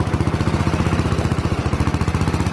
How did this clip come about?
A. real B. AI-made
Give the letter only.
A